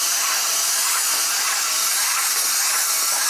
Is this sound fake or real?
real